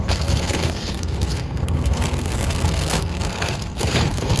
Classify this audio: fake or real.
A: fake